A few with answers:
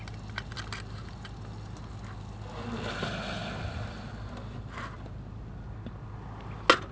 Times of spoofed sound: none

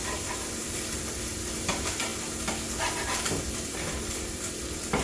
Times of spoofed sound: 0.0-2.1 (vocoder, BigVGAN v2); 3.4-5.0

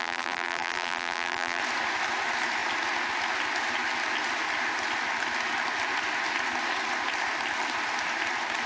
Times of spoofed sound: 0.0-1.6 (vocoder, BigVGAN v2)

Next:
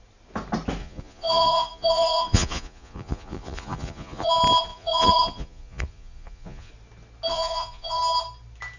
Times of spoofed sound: 0.8-4.3 (vocoder, Vocos); 4.7-6.7; 7.3-8.0